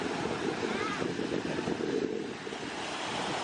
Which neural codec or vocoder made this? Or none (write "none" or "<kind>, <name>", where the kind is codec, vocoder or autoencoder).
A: vocoder, BigVGAN v2